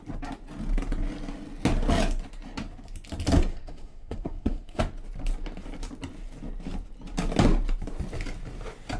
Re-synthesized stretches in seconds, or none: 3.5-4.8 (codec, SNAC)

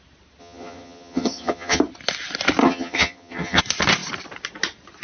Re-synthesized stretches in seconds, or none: 0.4-1.8 (vocoder, HiFi-GAN); 2.6-3.6

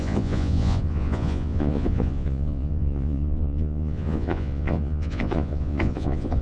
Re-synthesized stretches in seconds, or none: 0.0-6.4 (vocoder, Vocos)

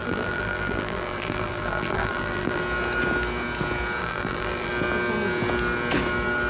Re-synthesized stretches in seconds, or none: 0.0-2.6 (vocoder, BigVGAN v2); 4.0-4.7

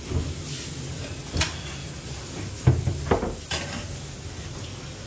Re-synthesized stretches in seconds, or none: none